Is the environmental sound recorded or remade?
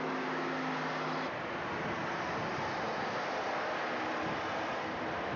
recorded